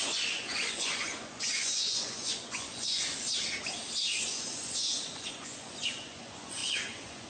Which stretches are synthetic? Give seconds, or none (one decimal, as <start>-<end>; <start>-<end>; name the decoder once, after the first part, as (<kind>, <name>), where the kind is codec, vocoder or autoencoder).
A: 0.0-3.1 (vocoder, Vocos); 4.3-7.3